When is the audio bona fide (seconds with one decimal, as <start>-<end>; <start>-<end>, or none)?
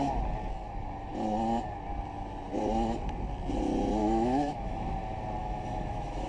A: 0.0-4.0; 4.8-5.4